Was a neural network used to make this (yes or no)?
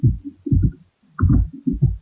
no